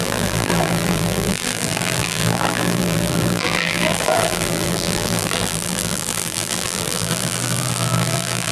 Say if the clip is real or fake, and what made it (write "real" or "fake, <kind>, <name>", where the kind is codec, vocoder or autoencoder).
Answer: fake, vocoder, BigVGAN v2